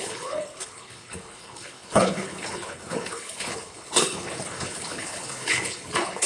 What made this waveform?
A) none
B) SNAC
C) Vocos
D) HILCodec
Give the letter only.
D